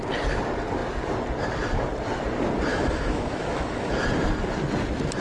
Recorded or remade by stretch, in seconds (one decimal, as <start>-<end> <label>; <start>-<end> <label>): 0.0-2.7 recorded; 2.7-3.9 remade; 3.9-5.2 recorded